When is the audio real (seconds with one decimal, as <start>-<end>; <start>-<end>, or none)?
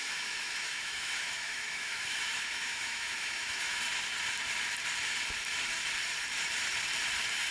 3.8-7.5